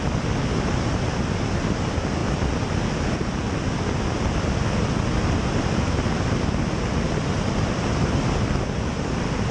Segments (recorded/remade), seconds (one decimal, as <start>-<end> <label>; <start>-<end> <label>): 0.0-9.5 recorded